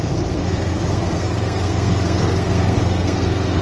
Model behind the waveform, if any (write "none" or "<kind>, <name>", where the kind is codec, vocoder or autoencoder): codec, SNAC